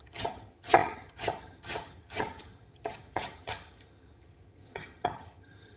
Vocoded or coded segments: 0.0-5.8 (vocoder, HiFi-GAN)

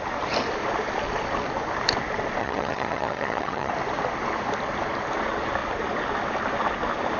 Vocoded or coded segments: 2.4-3.7 (vocoder, HiFi-GAN)